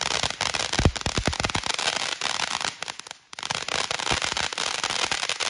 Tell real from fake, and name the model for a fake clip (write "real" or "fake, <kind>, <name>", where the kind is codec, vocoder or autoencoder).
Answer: real